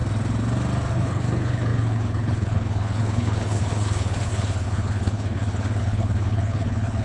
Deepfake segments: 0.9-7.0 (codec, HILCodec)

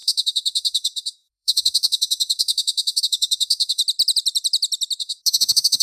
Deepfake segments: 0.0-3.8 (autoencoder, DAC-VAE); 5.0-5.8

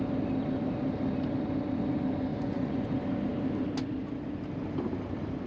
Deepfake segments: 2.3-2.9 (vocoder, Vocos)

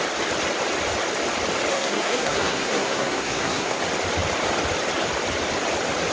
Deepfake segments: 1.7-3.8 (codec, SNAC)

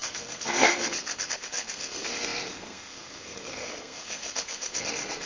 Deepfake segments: 0.0-5.3 (codec, SNAC)

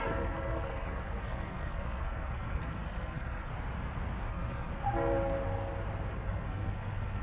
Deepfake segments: 0.0-3.5 (codec, SNAC); 4.3-4.7; 6.1-7.2

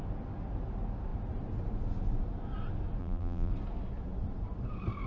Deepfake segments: 3.0-3.5 (vocoder, BigVGAN v2)